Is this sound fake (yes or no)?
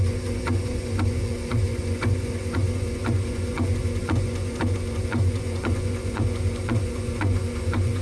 yes